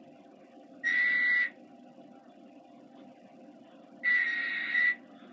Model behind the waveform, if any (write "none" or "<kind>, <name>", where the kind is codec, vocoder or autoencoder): none